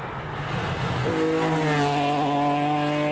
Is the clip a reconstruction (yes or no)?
no